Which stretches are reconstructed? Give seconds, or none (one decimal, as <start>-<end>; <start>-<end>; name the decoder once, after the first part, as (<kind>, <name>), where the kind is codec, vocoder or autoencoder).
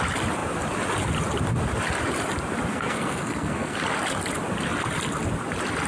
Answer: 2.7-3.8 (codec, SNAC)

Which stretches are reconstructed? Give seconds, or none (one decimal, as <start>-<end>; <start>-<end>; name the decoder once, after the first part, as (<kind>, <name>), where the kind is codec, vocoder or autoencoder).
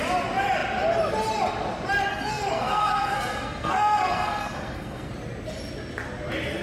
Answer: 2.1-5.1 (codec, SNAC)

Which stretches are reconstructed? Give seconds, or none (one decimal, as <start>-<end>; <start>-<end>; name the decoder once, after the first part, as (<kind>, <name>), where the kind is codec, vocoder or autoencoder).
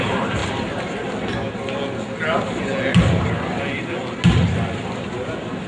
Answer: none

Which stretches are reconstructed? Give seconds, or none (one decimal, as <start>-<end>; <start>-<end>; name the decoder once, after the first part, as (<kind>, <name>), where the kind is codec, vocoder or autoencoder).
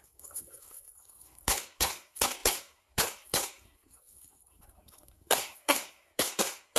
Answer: 0.0-6.8 (codec, SNAC)